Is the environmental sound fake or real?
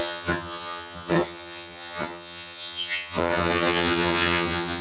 fake